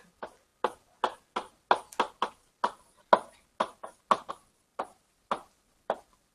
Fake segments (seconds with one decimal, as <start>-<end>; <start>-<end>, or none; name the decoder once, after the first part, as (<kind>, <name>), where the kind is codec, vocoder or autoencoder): 4.7-5.2 (vocoder, BigVGAN v2)